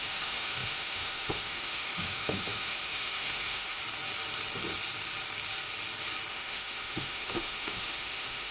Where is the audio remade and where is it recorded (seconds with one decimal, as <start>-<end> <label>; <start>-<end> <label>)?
0.0-3.8 remade; 3.8-6.3 recorded; 6.3-8.5 remade